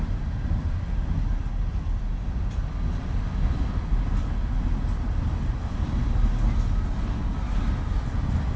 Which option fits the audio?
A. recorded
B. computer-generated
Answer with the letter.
A